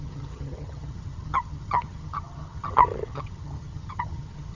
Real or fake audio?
fake